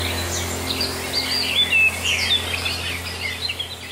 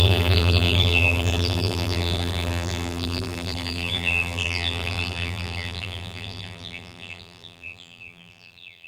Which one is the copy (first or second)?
second